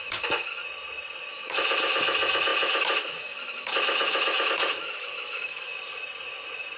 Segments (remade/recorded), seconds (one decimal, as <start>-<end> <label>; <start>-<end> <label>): 0.0-0.6 remade; 0.6-1.3 recorded; 1.3-5.7 remade; 5.7-6.8 recorded